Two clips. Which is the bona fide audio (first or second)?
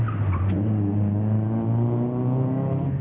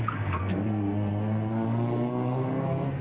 first